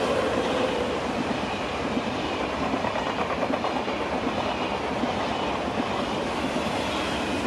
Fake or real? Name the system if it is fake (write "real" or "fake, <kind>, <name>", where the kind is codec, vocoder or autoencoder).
real